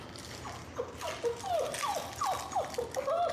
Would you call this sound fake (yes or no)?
no